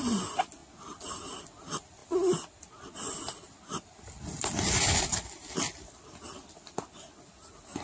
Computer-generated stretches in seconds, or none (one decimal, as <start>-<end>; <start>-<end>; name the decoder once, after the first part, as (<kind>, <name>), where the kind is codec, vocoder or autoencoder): none